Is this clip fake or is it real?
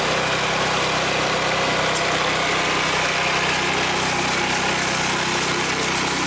real